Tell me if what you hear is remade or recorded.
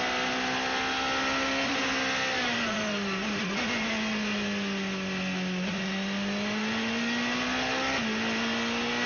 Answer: recorded